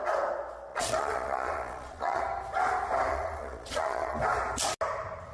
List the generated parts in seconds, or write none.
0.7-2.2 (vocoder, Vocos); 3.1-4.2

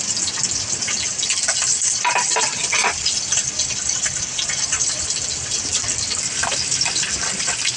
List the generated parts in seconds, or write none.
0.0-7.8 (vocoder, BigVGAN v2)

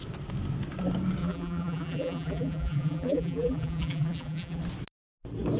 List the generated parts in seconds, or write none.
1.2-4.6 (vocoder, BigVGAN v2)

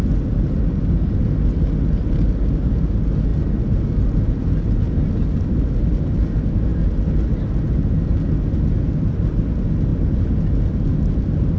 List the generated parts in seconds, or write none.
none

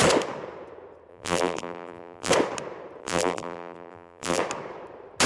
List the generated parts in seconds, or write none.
1.1-2.3 (vocoder, BigVGAN v2); 3.0-4.4